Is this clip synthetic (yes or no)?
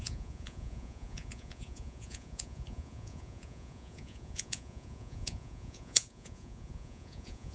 yes